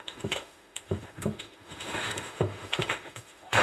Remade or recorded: remade